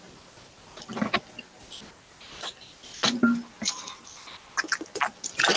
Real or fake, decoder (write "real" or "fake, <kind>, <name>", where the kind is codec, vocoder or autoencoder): real